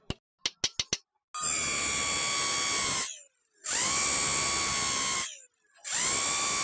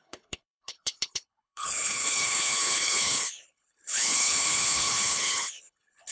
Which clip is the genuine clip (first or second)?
first